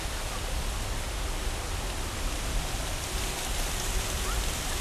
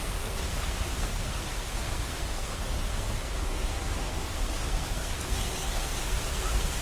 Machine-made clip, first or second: second